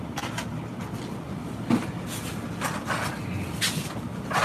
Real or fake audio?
real